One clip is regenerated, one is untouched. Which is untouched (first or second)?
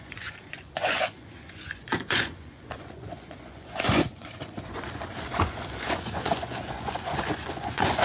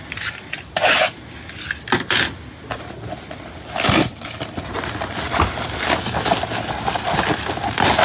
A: second